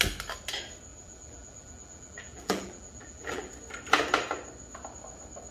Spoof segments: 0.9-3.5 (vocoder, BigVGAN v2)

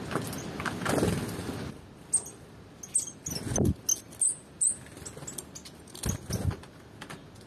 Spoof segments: none

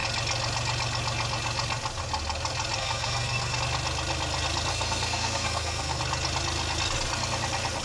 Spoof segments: 2.8-3.6 (codec, SNAC); 4.7-6.0